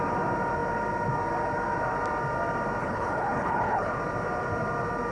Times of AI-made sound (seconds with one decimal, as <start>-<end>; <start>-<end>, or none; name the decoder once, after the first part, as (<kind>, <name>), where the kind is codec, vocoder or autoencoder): 2.8-4.0 (codec, HILCodec)